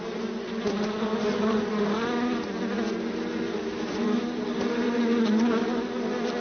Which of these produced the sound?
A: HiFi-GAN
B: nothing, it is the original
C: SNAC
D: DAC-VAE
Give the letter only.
B